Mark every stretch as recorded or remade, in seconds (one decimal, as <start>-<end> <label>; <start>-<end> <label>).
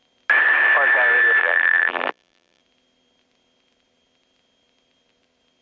0.0-1.4 recorded; 1.4-2.6 remade; 2.6-5.6 recorded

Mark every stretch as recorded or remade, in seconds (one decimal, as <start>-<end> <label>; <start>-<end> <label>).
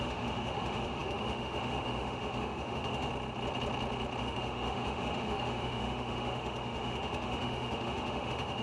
0.0-3.1 remade; 3.1-4.2 recorded; 4.2-8.6 remade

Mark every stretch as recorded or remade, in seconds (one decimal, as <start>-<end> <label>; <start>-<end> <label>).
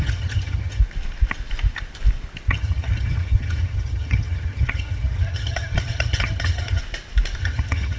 0.0-0.8 remade; 0.8-2.5 recorded; 2.5-6.8 remade; 6.8-7.4 recorded; 7.4-8.0 remade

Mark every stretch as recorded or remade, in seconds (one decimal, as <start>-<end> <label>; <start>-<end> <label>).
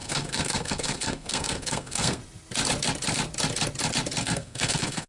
0.0-2.2 remade; 2.2-4.2 recorded; 4.2-5.1 remade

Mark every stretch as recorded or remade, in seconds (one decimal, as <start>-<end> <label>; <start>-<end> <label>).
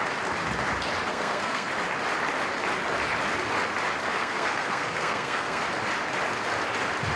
0.0-1.1 recorded; 1.1-1.7 remade; 1.7-4.1 recorded; 4.1-5.6 remade; 5.6-7.2 recorded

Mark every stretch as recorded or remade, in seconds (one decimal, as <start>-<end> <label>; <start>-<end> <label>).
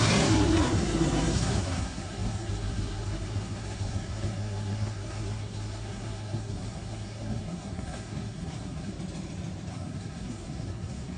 0.0-8.9 remade; 8.9-9.7 recorded; 9.7-11.2 remade